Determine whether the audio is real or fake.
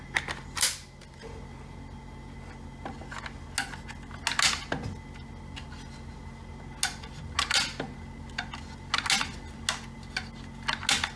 real